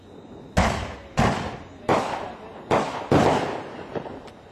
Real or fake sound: real